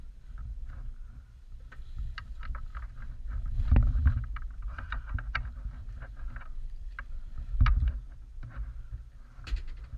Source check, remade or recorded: remade